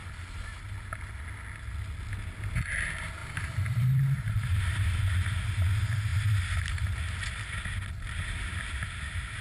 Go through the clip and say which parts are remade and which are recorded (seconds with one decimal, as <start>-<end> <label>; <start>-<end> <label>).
0.0-3.2 recorded; 3.2-5.0 remade; 5.0-9.4 recorded